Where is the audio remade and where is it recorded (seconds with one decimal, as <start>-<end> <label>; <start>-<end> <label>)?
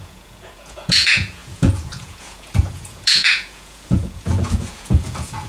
0.0-5.5 remade